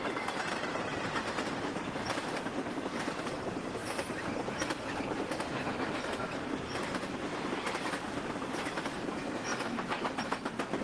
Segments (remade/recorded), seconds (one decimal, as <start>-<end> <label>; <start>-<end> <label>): 0.0-5.7 remade; 5.7-6.5 recorded; 6.5-10.8 remade